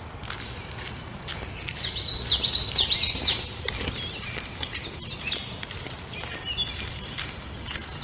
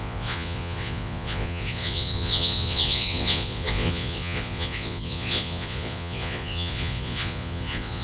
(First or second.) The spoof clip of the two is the second